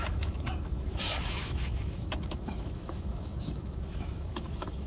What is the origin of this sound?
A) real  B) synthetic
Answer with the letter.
B